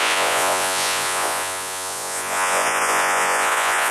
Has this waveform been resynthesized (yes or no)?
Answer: yes